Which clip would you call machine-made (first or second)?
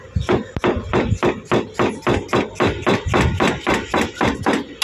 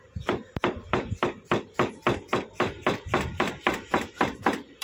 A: second